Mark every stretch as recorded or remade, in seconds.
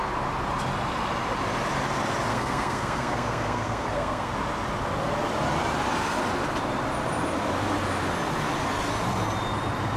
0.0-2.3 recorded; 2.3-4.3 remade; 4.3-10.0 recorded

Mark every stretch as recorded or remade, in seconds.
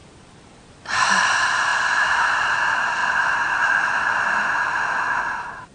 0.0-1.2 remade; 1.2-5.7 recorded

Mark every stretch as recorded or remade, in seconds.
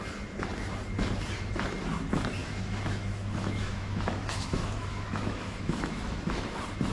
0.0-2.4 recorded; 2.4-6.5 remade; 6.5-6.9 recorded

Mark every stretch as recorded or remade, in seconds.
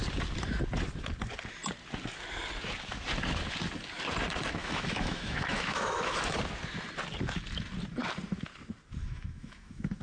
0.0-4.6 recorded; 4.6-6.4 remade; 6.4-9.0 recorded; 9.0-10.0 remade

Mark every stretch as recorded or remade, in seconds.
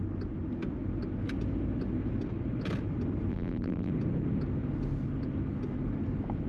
0.0-3.3 recorded; 3.3-3.9 remade; 3.9-6.5 recorded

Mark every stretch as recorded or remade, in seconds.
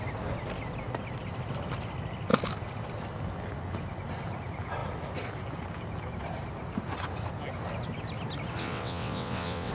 0.0-8.6 recorded; 8.6-9.7 remade